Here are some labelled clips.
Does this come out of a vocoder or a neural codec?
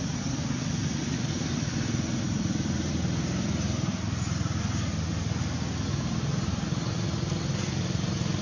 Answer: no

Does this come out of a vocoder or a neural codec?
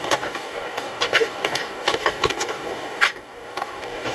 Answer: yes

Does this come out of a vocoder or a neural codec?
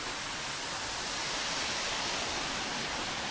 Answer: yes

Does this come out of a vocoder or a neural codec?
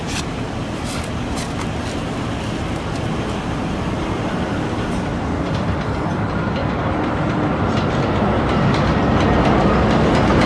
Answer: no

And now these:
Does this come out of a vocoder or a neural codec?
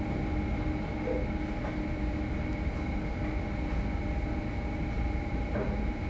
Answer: no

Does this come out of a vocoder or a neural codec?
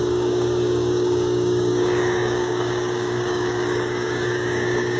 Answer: yes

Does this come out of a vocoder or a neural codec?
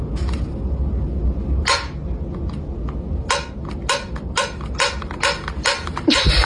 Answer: no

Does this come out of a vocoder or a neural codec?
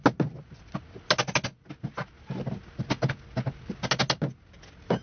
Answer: no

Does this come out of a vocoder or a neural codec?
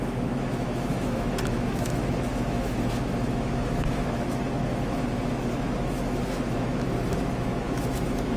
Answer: yes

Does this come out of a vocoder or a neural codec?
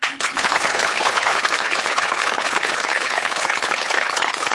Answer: yes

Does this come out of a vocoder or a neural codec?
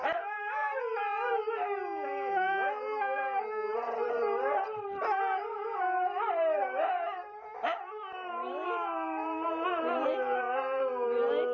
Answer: yes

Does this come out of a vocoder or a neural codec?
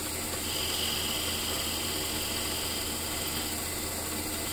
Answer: no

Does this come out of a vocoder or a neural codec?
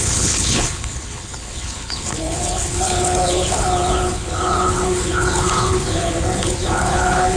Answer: yes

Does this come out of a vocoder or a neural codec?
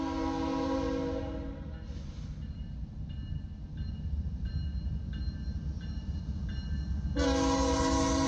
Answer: no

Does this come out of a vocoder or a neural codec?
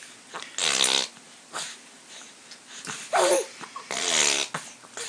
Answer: no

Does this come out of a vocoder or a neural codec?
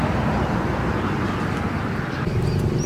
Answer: no